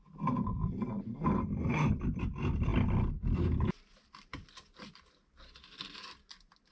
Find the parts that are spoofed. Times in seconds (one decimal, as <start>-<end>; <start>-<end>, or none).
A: none